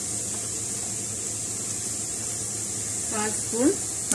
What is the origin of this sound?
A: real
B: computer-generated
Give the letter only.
A